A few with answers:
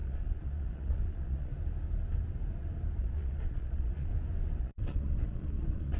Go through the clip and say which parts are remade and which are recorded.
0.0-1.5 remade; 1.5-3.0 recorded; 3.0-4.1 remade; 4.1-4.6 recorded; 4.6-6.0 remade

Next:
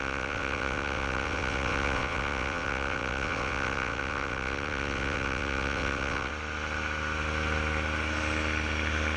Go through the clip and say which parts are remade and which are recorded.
0.0-6.3 remade; 6.3-9.2 recorded

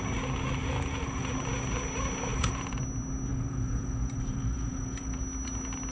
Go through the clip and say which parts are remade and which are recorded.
0.0-0.6 recorded; 0.6-1.3 remade; 1.3-2.3 recorded; 2.3-2.8 remade; 2.8-3.3 recorded; 3.3-5.2 remade; 5.2-5.9 recorded

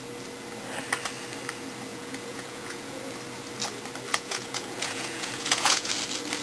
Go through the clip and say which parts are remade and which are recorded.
0.0-1.9 recorded; 1.9-3.0 remade; 3.0-4.1 recorded; 4.1-5.9 remade; 5.9-6.4 recorded

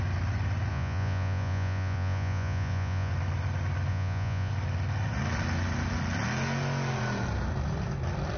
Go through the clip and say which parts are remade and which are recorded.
0.0-0.7 recorded; 0.7-3.1 remade; 3.1-3.9 recorded; 3.9-4.5 remade; 4.5-8.4 recorded